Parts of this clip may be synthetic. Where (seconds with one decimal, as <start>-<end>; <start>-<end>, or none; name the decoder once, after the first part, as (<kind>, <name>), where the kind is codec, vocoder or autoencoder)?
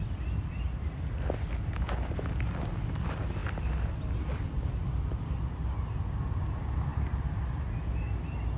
none